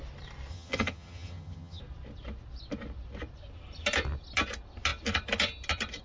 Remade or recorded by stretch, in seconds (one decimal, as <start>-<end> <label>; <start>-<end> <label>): 0.0-0.5 recorded; 0.5-1.8 remade; 1.8-6.0 recorded